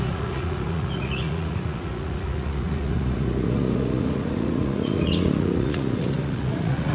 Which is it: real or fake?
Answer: fake